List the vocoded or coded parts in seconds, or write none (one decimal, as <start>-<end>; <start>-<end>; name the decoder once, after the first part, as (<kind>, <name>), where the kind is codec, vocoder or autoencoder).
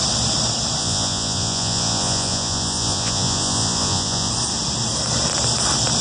0.8-4.3 (vocoder, Vocos)